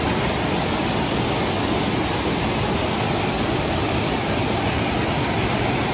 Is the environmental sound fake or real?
real